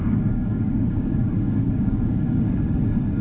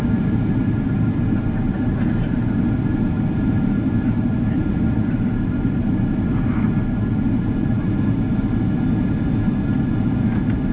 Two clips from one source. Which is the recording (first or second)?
second